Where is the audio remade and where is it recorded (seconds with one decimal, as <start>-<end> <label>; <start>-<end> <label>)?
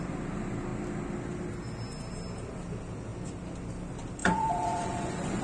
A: 0.0-4.2 recorded; 4.2-5.4 remade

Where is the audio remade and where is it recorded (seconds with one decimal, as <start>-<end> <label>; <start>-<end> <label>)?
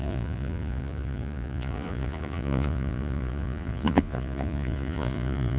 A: 0.0-5.6 remade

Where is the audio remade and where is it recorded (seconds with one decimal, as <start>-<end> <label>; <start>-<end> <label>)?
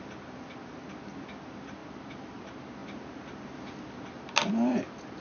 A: 0.0-5.2 recorded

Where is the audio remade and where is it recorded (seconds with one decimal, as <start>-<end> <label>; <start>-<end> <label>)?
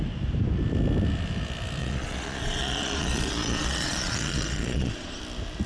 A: 0.0-1.8 recorded; 1.8-5.2 remade; 5.2-5.7 recorded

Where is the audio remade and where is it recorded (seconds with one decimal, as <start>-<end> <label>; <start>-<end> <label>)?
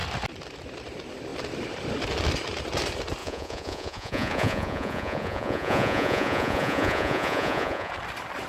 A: 0.0-3.2 recorded; 3.2-7.9 remade; 7.9-8.5 recorded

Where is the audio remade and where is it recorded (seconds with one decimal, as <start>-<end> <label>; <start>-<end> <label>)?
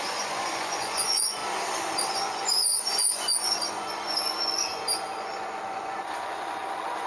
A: 0.0-1.4 remade; 1.4-2.1 recorded; 2.1-7.1 remade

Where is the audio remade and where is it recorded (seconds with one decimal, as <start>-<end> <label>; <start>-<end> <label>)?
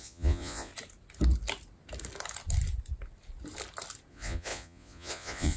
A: 0.0-0.7 remade; 0.7-4.1 recorded; 4.1-5.6 remade